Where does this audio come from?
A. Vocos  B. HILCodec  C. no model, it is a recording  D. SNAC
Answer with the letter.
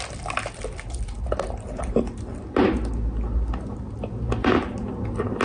C